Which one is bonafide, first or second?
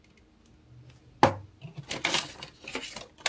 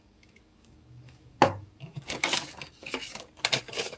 first